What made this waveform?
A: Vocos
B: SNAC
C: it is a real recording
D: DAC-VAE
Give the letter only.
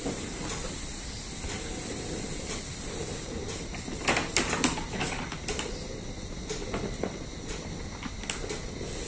C